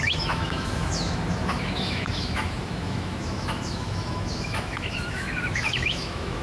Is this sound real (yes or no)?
no